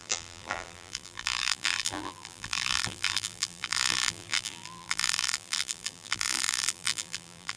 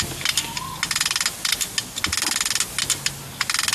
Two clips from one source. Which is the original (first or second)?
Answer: second